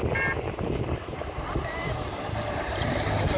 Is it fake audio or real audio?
fake